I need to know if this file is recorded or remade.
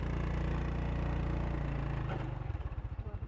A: recorded